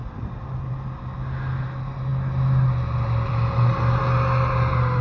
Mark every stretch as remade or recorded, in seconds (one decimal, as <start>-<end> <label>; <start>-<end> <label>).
0.0-5.0 recorded